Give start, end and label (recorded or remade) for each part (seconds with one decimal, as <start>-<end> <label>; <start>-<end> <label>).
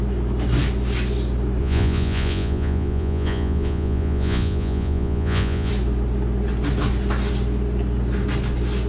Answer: 0.0-1.6 recorded; 1.6-5.7 remade; 5.7-8.9 recorded